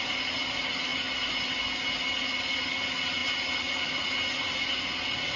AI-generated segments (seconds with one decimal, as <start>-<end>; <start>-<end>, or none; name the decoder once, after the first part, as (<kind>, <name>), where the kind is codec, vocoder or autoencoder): none